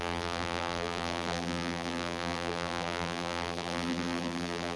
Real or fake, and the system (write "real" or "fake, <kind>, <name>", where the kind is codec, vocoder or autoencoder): fake, vocoder, BigVGAN v2